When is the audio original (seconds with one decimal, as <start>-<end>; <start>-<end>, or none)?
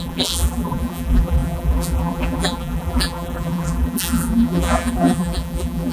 none